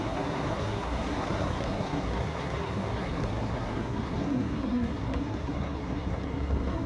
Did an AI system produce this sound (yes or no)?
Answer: yes